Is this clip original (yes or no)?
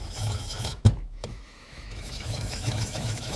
no